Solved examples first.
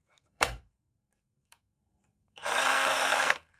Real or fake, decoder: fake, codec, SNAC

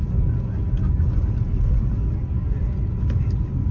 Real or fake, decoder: real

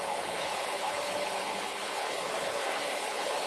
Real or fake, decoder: fake, codec, HILCodec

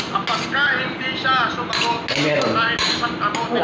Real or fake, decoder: real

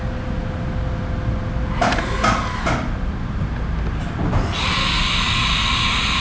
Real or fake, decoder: real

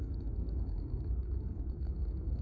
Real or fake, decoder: fake, codec, SNAC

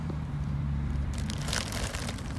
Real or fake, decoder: fake, vocoder, BigVGAN v2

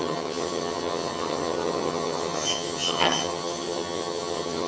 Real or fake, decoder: fake, vocoder, HiFi-GAN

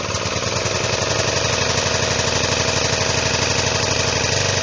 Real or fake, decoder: real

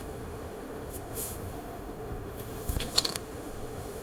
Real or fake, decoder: fake, autoencoder, DAC-VAE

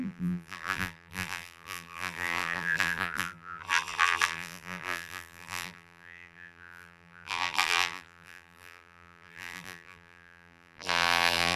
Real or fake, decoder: fake, vocoder, BigVGAN v2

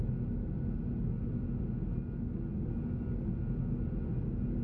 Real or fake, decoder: real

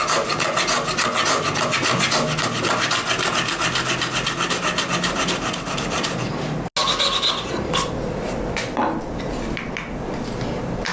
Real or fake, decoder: real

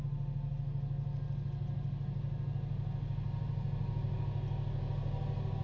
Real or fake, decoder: real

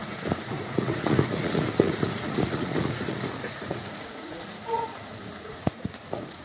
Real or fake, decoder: fake, vocoder, Vocos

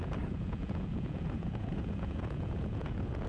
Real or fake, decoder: fake, vocoder, Vocos